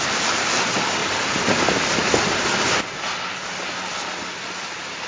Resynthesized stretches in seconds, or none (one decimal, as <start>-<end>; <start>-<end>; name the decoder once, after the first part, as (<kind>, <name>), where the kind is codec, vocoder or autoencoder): 0.0-1.0 (vocoder, BigVGAN v2); 3.3-5.1